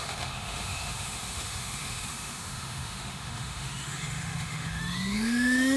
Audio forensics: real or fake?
fake